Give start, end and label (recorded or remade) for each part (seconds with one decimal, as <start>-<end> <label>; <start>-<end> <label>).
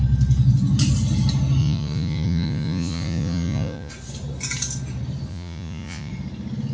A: 0.0-1.6 recorded; 1.6-3.9 remade; 3.9-5.3 recorded; 5.3-6.1 remade; 6.1-6.7 recorded